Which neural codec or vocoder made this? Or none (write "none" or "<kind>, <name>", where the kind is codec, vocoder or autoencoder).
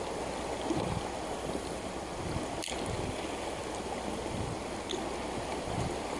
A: none